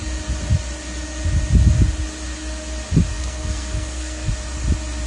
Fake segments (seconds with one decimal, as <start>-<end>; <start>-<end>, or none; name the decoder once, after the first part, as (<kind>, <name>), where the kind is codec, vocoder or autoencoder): 3.1-4.3 (codec, SNAC)